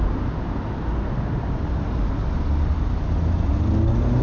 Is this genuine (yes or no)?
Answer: yes